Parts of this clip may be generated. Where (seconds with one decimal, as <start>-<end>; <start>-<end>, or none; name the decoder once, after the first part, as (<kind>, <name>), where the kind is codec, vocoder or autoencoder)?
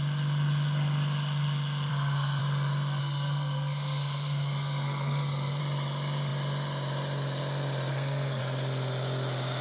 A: 1.9-2.4 (codec, SNAC); 3.0-5.6; 7.9-8.4